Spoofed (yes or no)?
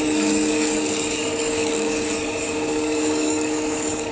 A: yes